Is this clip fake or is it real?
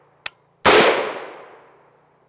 real